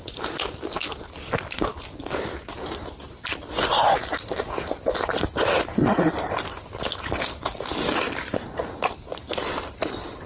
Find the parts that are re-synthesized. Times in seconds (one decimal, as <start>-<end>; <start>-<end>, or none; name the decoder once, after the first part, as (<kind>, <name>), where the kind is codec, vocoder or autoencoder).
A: none